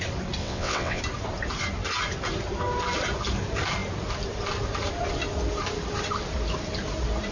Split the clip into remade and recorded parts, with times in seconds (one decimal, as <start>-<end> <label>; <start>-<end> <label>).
0.0-0.4 recorded; 0.4-1.0 remade; 1.0-7.3 recorded